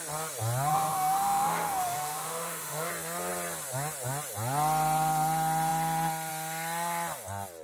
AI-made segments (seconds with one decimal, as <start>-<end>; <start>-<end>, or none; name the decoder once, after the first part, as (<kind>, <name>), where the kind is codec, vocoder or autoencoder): 0.7-2.9 (autoencoder, DAC-VAE)